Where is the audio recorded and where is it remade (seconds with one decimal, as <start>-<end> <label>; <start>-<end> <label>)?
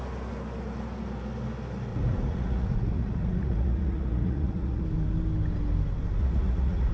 0.0-1.9 recorded; 1.9-4.8 remade; 4.8-6.2 recorded; 6.2-6.9 remade